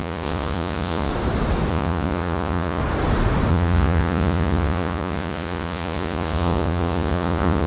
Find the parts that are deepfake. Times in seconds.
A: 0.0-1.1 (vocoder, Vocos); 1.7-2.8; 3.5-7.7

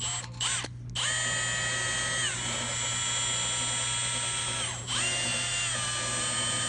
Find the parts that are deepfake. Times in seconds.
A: none

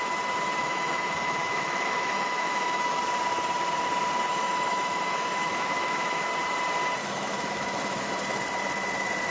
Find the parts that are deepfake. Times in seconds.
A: 0.6-3.0 (autoencoder, DAC-VAE); 4.3-6.2; 7.0-8.1

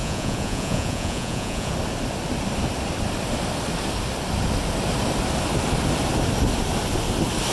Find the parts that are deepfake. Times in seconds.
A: 0.0-1.7 (vocoder, Vocos)

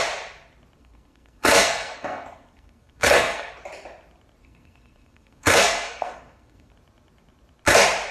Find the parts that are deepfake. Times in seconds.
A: 0.8-3.5 (codec, SNAC); 4.4-6.7